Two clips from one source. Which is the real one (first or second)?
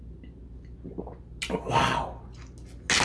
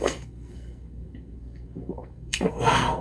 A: first